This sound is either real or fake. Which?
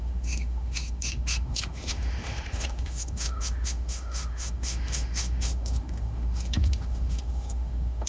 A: fake